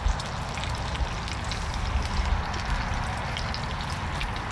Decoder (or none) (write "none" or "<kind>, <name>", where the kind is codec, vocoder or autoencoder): none